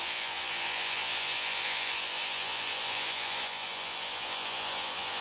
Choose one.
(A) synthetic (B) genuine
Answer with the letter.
A